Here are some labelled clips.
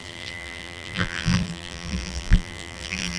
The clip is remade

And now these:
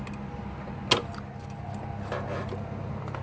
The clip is recorded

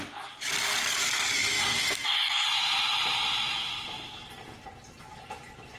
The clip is recorded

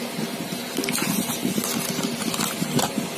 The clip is recorded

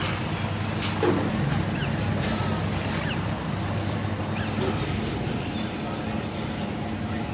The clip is recorded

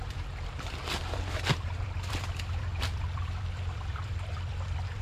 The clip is remade